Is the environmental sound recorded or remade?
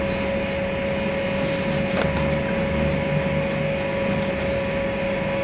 recorded